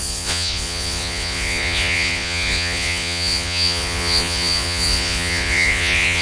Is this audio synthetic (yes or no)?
yes